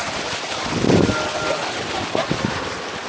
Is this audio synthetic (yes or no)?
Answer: no